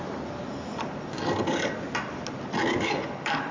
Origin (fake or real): real